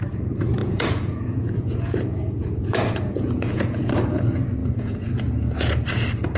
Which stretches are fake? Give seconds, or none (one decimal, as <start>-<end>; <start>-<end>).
0.6-3.9; 4.6-5.1